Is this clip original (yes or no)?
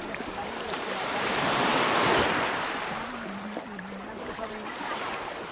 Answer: no